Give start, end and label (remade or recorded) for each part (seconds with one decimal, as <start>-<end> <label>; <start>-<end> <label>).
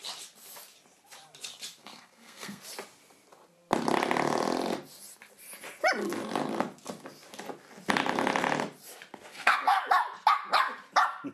0.0-1.8 recorded; 1.8-2.6 remade; 2.6-9.3 recorded; 9.3-9.8 remade; 9.8-11.3 recorded